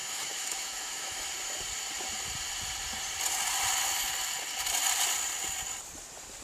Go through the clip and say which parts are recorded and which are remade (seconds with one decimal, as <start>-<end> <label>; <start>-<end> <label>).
0.0-1.3 remade; 1.3-6.4 recorded